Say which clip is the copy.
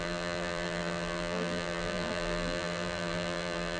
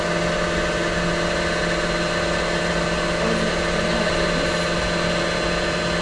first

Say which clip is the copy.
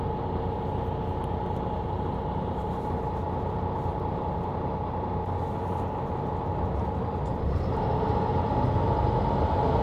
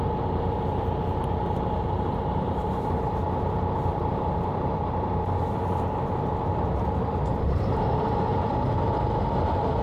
second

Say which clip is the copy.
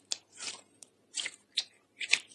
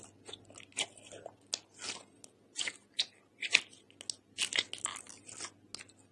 first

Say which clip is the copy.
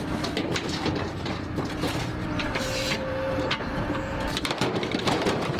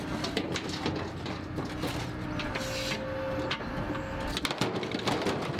first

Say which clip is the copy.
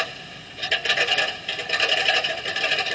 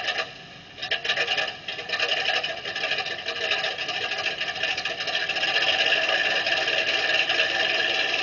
first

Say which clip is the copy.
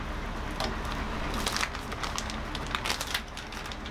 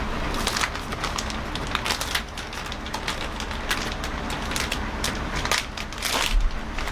second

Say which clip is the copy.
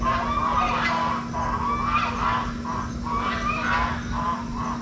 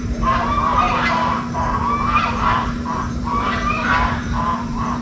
second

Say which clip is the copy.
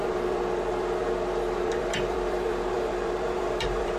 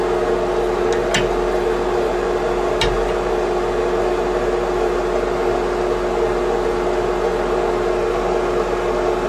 first